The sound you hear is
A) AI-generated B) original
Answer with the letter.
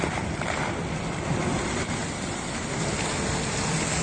B